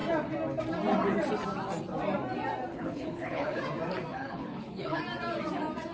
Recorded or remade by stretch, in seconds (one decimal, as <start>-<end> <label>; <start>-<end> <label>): 0.0-2.7 recorded; 2.7-3.6 remade; 3.6-4.1 recorded; 4.1-5.0 remade; 5.0-5.9 recorded